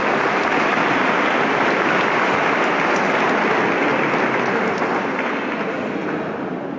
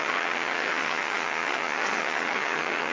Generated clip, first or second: second